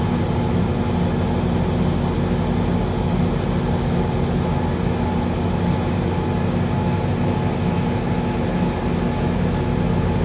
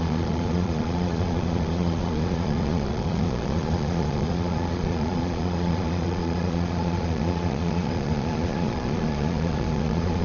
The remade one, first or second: second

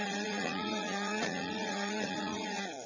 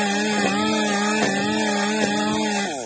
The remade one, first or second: first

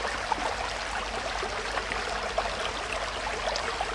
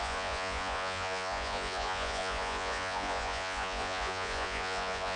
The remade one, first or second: second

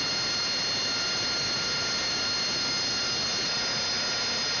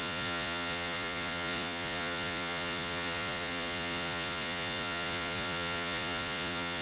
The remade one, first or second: second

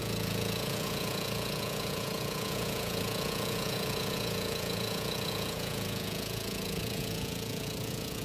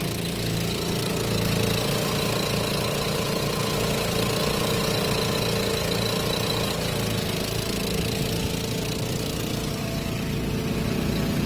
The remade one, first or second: first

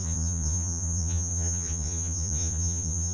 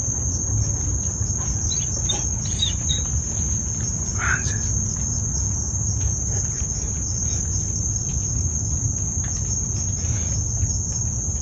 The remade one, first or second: first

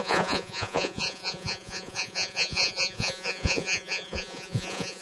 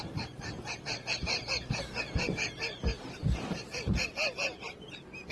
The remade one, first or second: first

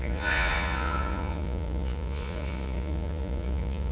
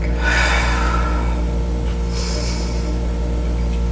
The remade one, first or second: first